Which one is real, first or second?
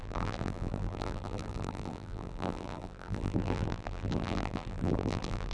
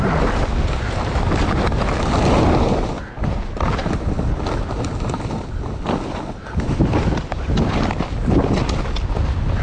second